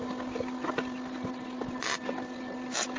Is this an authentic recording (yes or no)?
yes